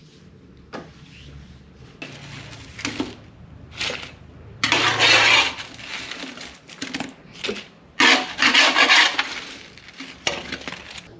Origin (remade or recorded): recorded